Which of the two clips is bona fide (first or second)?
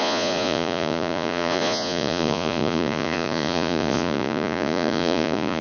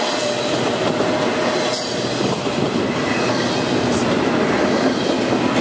second